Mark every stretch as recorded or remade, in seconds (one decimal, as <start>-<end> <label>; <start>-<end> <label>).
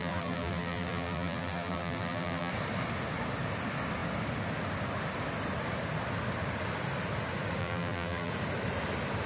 0.0-2.5 remade; 2.5-7.6 recorded; 7.6-8.3 remade; 8.3-9.3 recorded